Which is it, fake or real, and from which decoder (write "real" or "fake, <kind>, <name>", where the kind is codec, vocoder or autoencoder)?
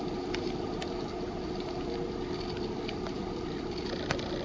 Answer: real